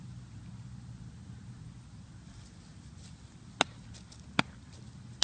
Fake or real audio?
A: real